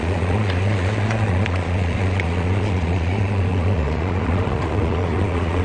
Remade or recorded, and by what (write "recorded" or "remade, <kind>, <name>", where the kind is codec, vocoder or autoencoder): remade, vocoder, Vocos